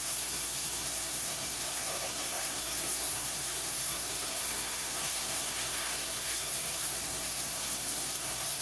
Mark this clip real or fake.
fake